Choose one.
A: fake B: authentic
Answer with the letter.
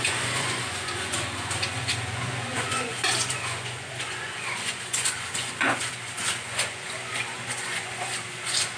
A